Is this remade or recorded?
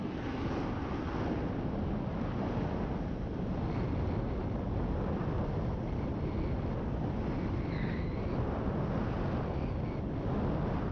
recorded